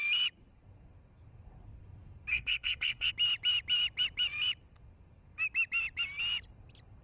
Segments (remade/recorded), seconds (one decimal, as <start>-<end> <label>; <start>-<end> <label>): 0.0-2.3 recorded; 2.3-3.1 remade; 3.1-7.0 recorded